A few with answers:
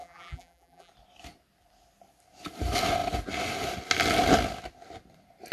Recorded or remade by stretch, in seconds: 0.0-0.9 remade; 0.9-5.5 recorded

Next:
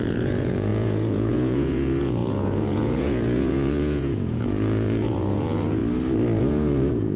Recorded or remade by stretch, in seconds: 0.0-5.8 remade; 5.8-6.4 recorded; 6.4-7.2 remade

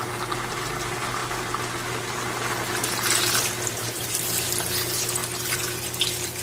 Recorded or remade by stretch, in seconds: 0.0-6.4 recorded

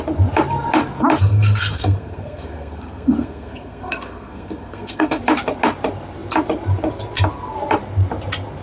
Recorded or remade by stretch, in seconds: 0.0-1.2 recorded; 1.2-5.2 remade; 5.2-8.6 recorded

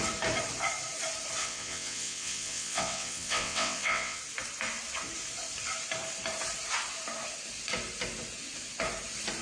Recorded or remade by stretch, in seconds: 0.0-1.4 recorded; 1.4-4.2 remade; 4.2-9.4 recorded

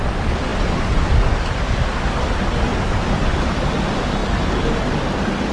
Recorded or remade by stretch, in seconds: 0.0-5.5 recorded

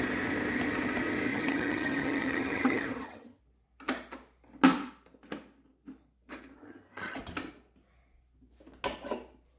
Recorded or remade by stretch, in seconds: 0.0-1.3 recorded; 1.3-3.4 remade; 3.4-6.6 recorded; 6.6-7.2 remade; 7.2-9.6 recorded